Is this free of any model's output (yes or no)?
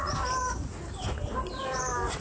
yes